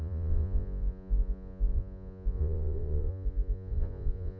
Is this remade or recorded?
remade